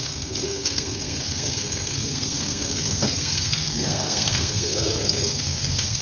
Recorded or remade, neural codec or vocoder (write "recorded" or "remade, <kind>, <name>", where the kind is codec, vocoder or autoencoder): remade, codec, SNAC